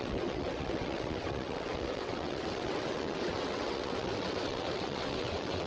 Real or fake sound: fake